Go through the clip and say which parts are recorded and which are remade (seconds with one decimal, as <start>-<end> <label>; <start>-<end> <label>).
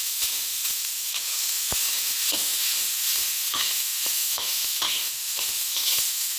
0.0-6.4 remade